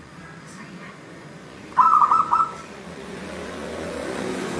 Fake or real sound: fake